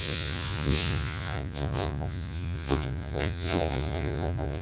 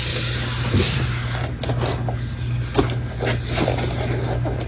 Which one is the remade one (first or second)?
first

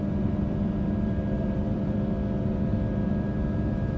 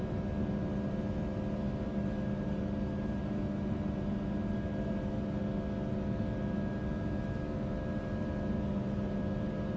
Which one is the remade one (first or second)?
first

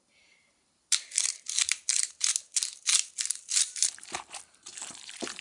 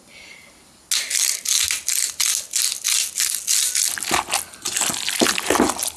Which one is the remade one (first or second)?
first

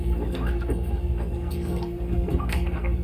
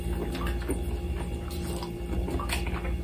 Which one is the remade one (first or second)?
first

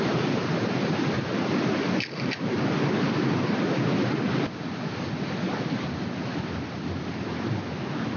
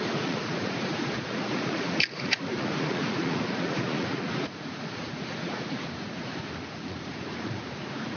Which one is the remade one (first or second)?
second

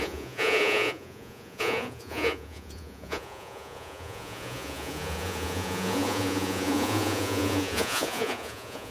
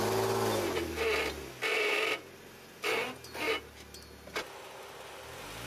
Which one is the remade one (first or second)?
first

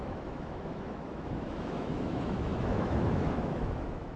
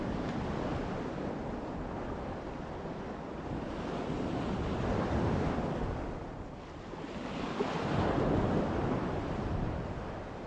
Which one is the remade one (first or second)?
first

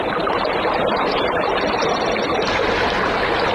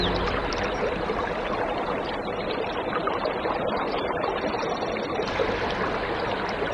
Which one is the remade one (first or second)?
first